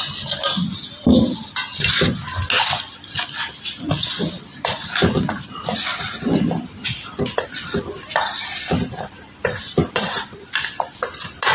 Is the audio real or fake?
real